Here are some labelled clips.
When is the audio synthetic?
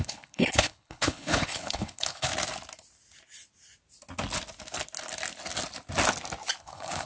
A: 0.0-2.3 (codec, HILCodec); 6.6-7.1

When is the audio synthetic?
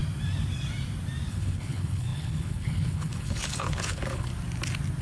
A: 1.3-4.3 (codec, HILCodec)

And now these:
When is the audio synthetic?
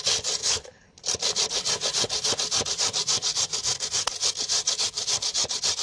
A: 0.4-1.0 (codec, HILCodec)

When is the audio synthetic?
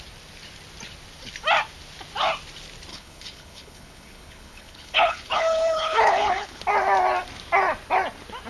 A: 2.9-6.6 (codec, HILCodec)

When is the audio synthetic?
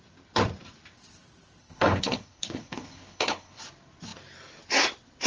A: 1.6-3.6 (codec, HILCodec)